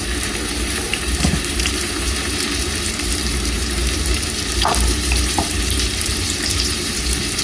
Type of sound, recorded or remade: remade